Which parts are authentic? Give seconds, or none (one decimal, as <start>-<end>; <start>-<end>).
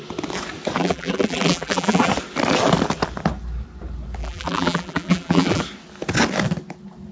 0.0-0.8; 2.1-4.2; 5.6-7.1